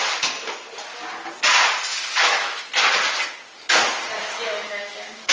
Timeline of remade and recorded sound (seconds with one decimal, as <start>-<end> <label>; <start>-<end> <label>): 0.0-1.9 recorded; 1.9-2.6 remade; 2.6-4.2 recorded; 4.2-5.3 remade

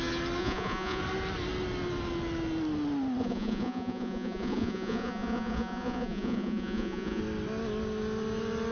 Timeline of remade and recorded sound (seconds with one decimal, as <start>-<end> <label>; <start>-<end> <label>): 0.0-0.4 recorded; 0.4-1.0 remade; 1.0-3.2 recorded; 3.2-7.2 remade; 7.2-8.7 recorded

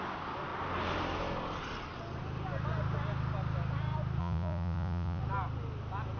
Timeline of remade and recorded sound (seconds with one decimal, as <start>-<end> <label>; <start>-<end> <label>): 0.0-4.2 recorded; 4.2-5.2 remade; 5.2-6.2 recorded

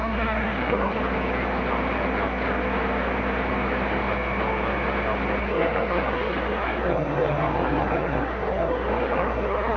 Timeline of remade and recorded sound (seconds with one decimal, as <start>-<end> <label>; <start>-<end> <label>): 0.0-1.0 remade; 1.0-5.4 recorded; 5.4-9.8 remade

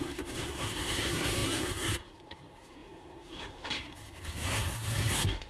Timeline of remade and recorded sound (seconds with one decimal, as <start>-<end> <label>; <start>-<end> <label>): 0.0-5.5 remade